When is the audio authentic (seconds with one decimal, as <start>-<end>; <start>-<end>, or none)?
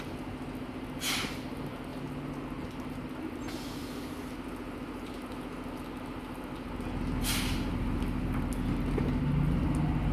0.0-10.1